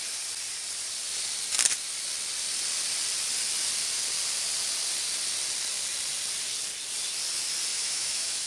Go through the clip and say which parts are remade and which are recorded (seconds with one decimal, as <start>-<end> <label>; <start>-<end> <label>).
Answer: 0.0-7.7 recorded; 7.7-8.5 remade